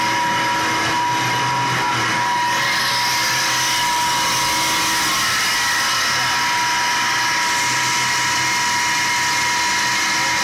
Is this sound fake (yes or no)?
no